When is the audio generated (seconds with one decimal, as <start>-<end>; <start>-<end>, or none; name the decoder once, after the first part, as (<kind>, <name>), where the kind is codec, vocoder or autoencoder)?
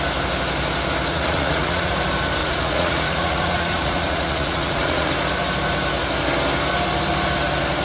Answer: 1.1-1.9 (vocoder, Vocos); 2.4-5.1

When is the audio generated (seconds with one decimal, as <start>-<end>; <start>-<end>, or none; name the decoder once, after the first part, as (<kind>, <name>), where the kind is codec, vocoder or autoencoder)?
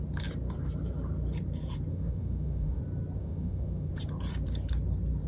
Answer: 1.9-2.8 (autoencoder, DAC-VAE); 3.2-3.9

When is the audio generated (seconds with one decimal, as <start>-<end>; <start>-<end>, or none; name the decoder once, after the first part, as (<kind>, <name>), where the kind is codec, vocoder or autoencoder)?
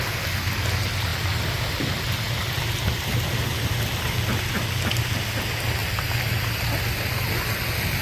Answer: none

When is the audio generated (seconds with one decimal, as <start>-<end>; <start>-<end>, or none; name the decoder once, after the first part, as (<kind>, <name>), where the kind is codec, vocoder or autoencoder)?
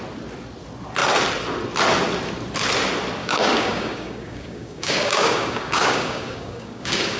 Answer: 3.2-7.2 (codec, DAC)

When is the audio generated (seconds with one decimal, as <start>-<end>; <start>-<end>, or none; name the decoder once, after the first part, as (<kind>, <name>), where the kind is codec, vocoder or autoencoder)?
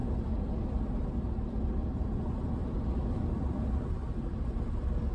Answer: 4.0-4.5 (vocoder, BigVGAN v2)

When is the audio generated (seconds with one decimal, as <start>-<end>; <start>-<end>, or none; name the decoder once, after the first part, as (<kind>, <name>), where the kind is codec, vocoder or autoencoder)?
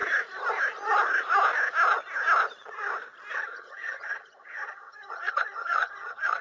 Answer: 3.4-6.4 (vocoder, HiFi-GAN)